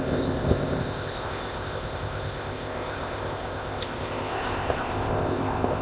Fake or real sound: fake